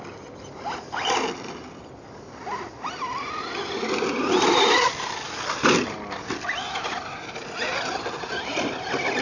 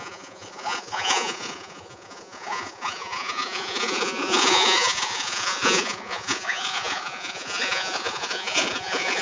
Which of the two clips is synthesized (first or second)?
second